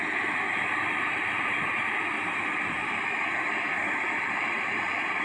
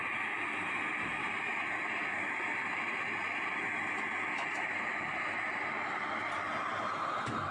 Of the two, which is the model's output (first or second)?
first